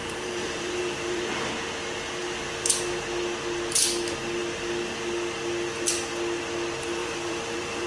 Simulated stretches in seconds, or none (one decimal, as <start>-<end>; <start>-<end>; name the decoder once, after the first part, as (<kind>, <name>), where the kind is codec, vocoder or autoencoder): 0.0-1.5 (vocoder, BigVGAN v2); 7.0-7.9